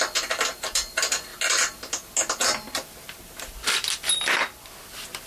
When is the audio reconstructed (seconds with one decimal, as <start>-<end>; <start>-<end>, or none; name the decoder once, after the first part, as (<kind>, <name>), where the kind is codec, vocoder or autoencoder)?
none